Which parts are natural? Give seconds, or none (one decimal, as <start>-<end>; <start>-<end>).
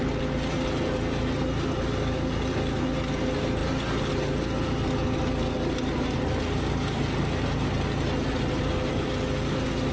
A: 0.0-9.9